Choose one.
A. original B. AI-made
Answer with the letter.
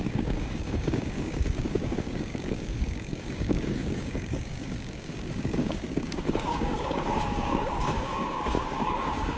B